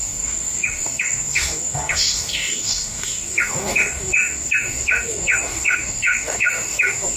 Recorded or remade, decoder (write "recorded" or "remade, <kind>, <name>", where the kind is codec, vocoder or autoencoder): remade, codec, DAC